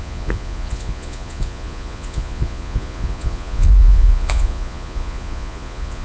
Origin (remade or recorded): remade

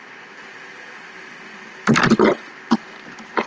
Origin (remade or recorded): remade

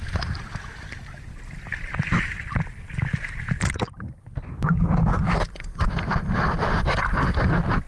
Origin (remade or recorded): recorded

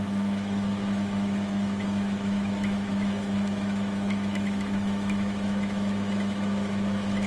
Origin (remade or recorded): remade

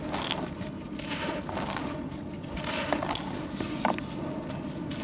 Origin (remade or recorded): recorded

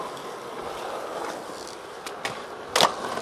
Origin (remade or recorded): recorded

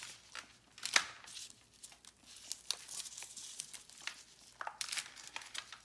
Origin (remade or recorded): recorded